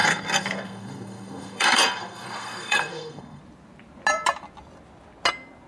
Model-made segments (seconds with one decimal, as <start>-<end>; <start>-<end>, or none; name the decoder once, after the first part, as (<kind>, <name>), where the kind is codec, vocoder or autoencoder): 0.0-3.4 (codec, SNAC)